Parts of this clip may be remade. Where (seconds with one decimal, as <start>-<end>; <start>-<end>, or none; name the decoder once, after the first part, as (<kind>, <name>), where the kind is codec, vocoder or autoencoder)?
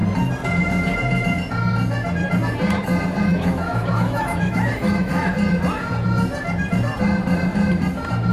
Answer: 3.3-5.3 (autoencoder, DAC-VAE)